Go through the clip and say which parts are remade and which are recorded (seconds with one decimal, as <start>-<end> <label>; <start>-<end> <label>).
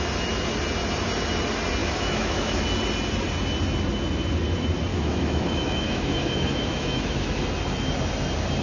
0.0-1.8 recorded; 1.8-2.6 remade; 2.6-4.9 recorded; 4.9-7.4 remade; 7.4-8.6 recorded